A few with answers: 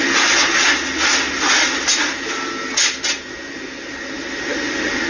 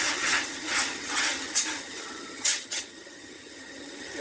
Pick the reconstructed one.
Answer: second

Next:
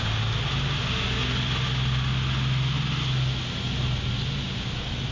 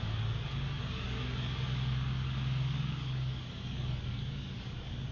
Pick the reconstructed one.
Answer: second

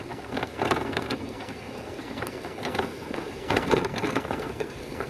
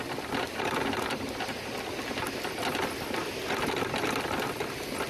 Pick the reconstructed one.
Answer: first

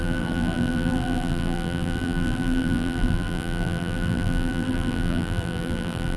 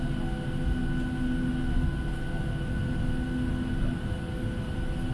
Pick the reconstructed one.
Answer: first